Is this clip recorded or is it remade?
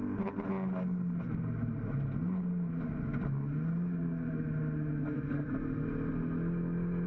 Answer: recorded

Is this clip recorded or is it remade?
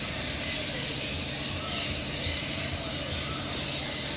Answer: recorded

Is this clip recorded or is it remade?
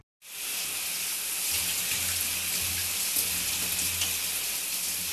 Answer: recorded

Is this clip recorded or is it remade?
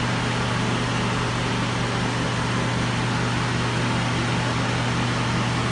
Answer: recorded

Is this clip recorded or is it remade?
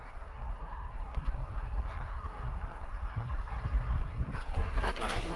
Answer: remade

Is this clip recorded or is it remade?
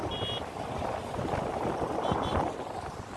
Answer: recorded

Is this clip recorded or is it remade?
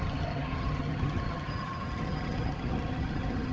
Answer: remade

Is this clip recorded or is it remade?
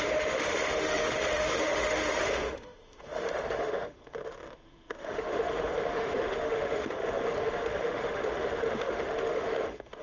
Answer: remade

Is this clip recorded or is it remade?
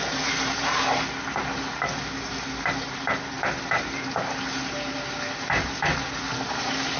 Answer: recorded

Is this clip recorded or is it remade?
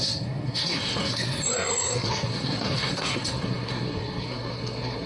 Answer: remade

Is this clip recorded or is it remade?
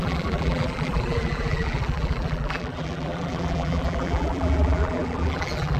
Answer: remade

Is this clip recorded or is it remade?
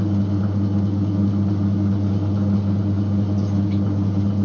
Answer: recorded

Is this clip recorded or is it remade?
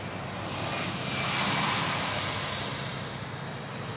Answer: recorded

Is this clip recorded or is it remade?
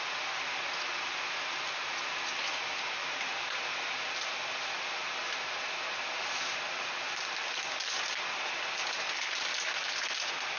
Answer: recorded